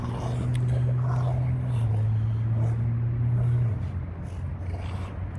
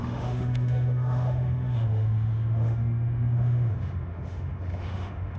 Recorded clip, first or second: first